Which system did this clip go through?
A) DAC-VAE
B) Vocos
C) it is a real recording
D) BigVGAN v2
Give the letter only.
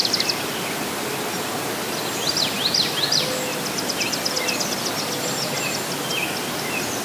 C